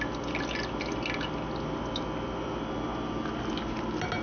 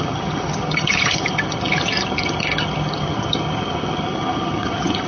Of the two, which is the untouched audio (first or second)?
first